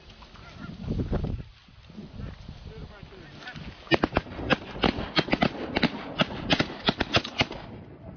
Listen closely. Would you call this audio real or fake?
real